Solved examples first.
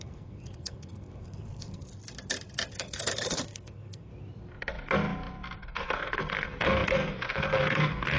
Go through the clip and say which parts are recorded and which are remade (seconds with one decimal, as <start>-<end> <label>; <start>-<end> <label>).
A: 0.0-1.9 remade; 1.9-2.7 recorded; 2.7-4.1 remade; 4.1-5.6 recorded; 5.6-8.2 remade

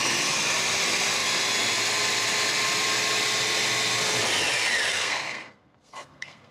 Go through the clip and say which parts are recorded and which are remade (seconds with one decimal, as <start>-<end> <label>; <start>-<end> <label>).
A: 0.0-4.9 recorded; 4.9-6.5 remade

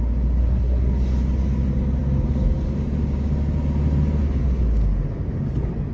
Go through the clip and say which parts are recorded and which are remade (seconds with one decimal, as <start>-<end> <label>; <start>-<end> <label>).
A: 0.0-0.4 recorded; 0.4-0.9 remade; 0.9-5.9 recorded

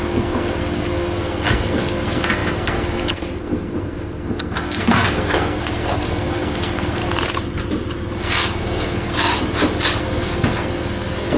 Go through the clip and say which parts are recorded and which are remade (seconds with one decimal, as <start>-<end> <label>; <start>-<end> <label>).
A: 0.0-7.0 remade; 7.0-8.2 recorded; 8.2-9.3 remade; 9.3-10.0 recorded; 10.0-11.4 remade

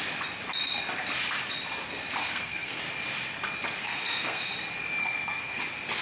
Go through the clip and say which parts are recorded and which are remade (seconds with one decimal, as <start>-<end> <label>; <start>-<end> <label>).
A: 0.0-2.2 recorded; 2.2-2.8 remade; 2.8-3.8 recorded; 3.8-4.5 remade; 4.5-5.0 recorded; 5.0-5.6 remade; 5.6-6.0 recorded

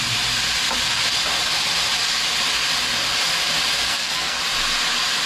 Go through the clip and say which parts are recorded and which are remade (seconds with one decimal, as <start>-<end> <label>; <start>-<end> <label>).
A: 0.0-3.9 recorded; 3.9-4.4 remade; 4.4-5.3 recorded